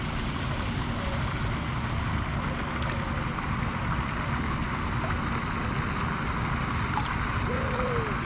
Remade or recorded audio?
recorded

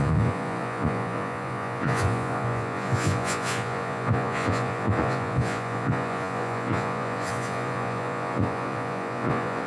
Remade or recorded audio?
remade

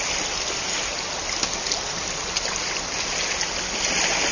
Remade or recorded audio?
recorded